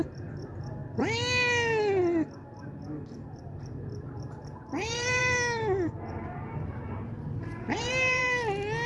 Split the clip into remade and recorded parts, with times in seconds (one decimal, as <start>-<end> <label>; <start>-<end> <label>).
0.0-0.8 remade; 0.8-3.3 recorded; 3.3-5.2 remade; 5.2-6.1 recorded; 6.1-8.2 remade; 8.2-8.9 recorded